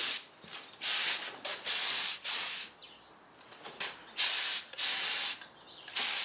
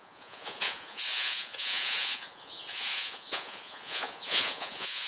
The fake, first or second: second